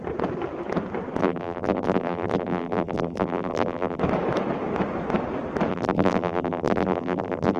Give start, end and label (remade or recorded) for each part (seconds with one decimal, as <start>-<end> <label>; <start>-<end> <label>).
0.0-1.2 recorded; 1.2-4.0 remade; 4.0-5.7 recorded; 5.7-7.6 remade